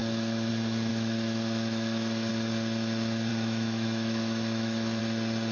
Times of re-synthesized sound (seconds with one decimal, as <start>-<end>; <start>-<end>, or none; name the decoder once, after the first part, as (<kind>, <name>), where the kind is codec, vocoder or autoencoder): 0.0-0.5 (autoencoder, DAC-VAE); 0.9-2.3; 3.3-5.0